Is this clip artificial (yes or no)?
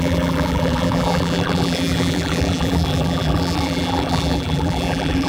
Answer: yes